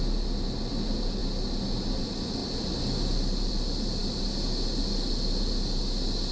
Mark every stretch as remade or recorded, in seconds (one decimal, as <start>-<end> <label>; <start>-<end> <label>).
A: 0.0-6.3 recorded